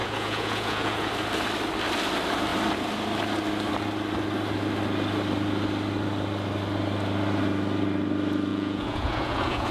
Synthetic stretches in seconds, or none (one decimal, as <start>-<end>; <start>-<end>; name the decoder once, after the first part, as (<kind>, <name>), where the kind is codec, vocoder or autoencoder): 0.0-1.1 (vocoder, Vocos); 8.5-9.7